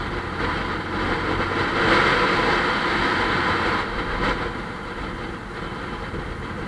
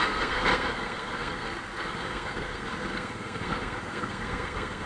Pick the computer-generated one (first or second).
second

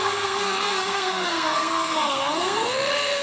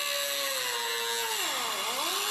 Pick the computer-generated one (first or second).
first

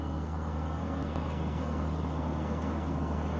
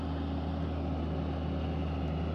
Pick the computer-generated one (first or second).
first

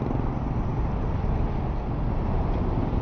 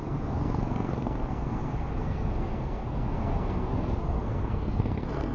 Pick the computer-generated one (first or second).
second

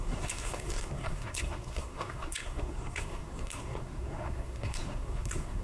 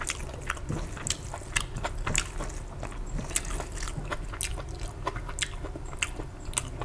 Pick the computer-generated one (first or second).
first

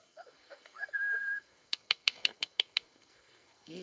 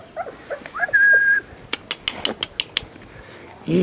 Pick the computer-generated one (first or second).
first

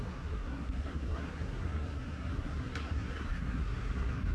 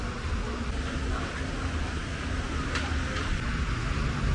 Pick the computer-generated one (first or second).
first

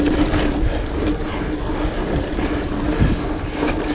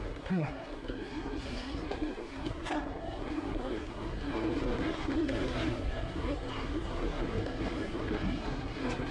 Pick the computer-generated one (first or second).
second